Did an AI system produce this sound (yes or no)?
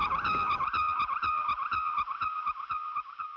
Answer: no